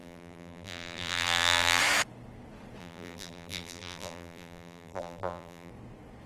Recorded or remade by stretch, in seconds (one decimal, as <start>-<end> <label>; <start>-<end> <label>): 0.0-1.8 remade; 1.8-2.8 recorded; 2.8-5.7 remade; 5.7-6.3 recorded